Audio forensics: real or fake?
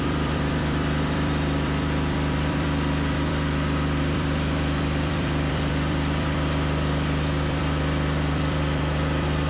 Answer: fake